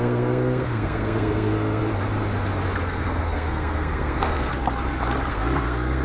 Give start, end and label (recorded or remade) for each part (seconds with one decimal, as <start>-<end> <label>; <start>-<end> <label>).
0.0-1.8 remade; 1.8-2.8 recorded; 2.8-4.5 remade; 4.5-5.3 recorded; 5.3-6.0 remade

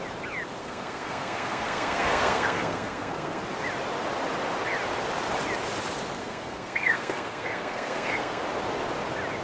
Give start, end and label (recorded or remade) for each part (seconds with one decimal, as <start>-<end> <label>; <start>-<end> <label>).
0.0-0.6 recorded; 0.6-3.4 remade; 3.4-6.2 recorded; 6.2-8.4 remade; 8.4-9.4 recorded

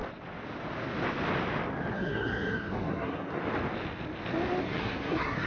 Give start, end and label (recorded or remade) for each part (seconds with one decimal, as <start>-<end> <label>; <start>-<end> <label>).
0.0-1.9 recorded; 1.9-3.4 remade; 3.4-4.6 recorded; 4.6-5.5 remade